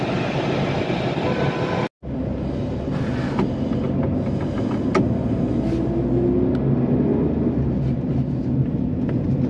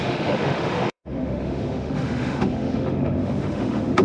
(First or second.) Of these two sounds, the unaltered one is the first